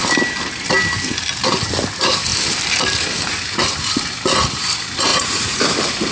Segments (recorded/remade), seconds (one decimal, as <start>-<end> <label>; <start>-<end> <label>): 0.0-5.1 recorded; 5.1-5.6 remade; 5.6-6.1 recorded